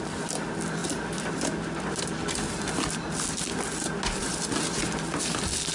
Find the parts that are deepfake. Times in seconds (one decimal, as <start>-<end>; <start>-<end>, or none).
none